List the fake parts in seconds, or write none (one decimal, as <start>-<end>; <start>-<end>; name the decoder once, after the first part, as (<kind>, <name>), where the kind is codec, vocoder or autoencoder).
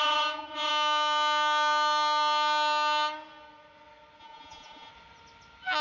0.0-0.7 (vocoder, Vocos); 4.2-4.9